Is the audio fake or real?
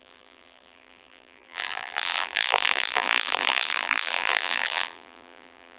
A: fake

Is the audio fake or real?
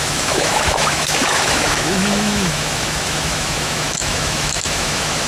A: fake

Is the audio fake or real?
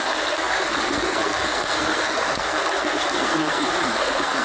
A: fake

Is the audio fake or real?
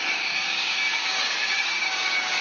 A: fake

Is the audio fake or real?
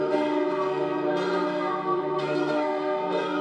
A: fake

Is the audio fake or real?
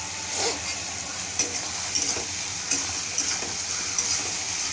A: real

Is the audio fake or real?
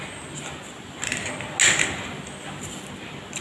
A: real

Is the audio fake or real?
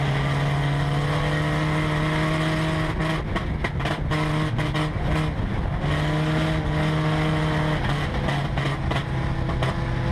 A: real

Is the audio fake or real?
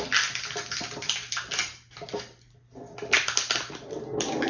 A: real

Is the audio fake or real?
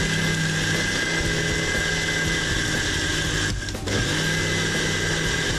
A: real